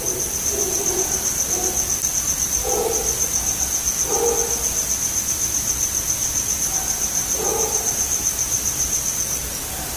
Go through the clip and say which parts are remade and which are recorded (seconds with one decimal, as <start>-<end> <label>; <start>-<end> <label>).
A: 0.0-6.2 recorded; 6.2-6.7 remade; 6.7-7.2 recorded; 7.2-9.1 remade; 9.1-10.0 recorded